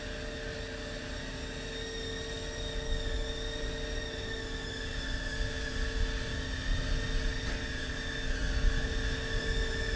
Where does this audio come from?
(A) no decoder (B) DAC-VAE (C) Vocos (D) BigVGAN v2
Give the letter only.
A